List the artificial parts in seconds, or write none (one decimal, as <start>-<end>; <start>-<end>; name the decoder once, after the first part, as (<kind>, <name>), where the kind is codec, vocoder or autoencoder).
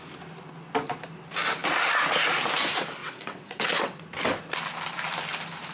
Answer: 3.0-4.0 (vocoder, WaveNeXt)